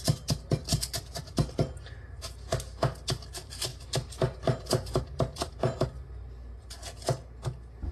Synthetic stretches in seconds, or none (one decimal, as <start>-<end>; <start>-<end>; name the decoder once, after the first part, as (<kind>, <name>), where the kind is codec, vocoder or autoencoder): none